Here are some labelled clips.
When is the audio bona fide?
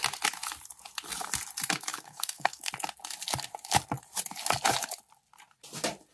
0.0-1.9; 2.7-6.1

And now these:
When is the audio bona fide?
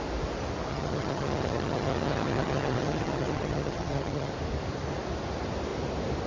0.0-0.7; 4.3-6.3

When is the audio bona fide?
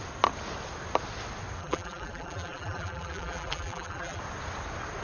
0.0-1.6; 4.2-5.0